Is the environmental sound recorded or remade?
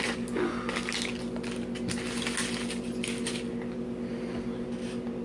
recorded